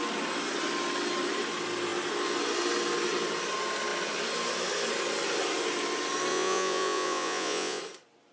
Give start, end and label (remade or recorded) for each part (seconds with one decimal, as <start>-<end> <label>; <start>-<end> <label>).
0.0-6.3 recorded; 6.3-7.8 remade; 7.8-8.3 recorded

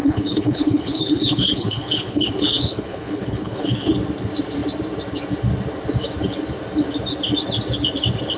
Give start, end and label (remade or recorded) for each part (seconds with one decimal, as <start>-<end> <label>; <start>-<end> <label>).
0.0-3.9 remade; 3.9-8.4 recorded